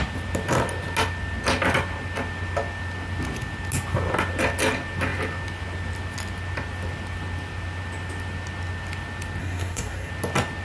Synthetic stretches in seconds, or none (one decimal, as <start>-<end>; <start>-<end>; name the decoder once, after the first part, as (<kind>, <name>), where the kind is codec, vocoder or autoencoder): 9.4-10.1 (codec, SNAC)